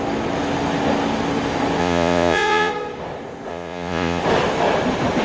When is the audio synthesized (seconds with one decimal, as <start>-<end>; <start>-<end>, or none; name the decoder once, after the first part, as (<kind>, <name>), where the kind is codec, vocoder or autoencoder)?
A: 1.8-2.7 (vocoder, Vocos); 3.5-4.2